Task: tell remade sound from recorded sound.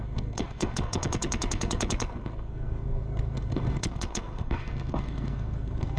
remade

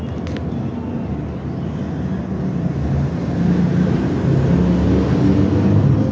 recorded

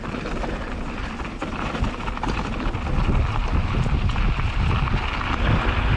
recorded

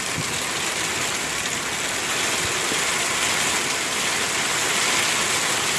recorded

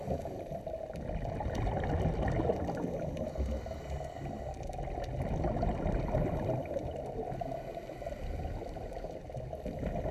recorded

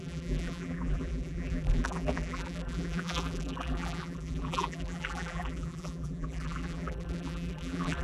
remade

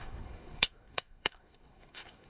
remade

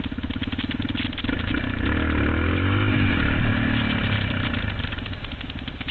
recorded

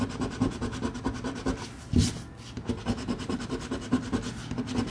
recorded